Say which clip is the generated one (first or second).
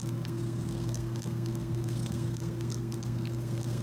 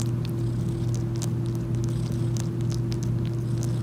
first